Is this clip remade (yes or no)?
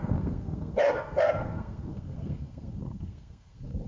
yes